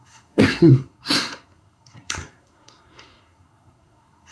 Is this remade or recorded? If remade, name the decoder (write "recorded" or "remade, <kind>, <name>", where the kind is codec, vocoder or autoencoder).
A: remade, codec, SNAC